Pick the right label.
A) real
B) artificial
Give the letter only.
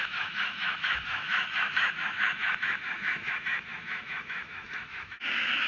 B